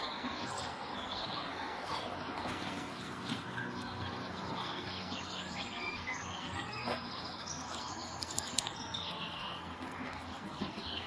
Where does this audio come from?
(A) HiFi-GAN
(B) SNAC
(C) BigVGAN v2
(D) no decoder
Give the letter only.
B